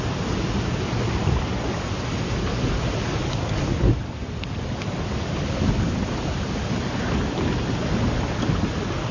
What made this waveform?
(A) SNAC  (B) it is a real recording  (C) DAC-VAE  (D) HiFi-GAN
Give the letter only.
B